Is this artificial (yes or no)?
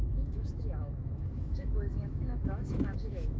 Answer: yes